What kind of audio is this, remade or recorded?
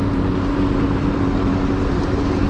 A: recorded